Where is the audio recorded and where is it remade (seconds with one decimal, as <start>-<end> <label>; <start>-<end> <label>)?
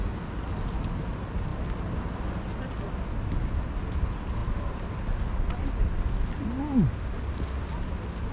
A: 0.0-8.3 recorded